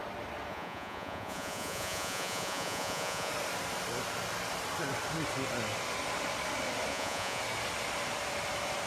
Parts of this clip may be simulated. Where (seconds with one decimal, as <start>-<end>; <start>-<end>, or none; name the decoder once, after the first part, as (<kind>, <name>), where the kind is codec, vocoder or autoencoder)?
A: 0.5-3.3 (vocoder, Vocos); 6.9-7.4